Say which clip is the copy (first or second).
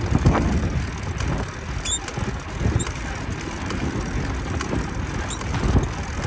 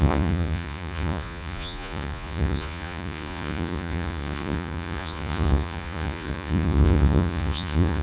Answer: second